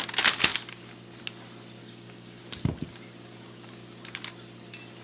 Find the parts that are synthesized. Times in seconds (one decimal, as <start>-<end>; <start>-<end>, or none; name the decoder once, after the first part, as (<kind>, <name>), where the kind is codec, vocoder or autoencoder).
1.8-2.4 (codec, DAC)